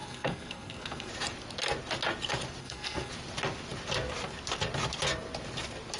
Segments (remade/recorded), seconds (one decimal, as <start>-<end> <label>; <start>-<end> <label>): 0.0-1.1 remade; 1.1-2.6 recorded; 2.6-3.1 remade; 3.1-6.0 recorded